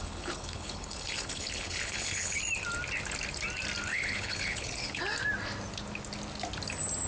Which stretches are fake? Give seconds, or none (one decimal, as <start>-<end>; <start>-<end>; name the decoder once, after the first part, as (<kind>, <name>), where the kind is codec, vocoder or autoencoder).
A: 0.0-2.4 (codec, HILCodec); 3.9-5.0